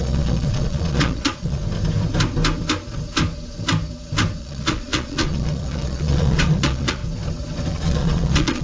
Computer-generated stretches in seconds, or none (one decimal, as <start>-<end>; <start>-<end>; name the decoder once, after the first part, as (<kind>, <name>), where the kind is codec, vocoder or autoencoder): 0.0-1.6 (vocoder, Vocos); 4.4-7.0; 7.7-8.6